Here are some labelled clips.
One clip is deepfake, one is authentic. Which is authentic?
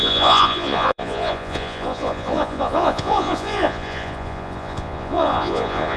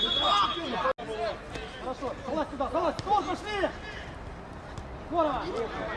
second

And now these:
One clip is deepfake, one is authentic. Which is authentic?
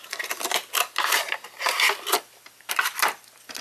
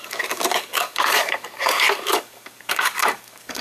first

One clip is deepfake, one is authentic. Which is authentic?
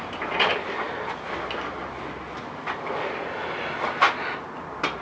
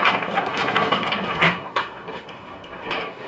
first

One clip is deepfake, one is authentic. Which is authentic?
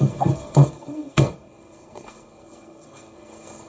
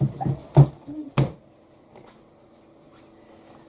second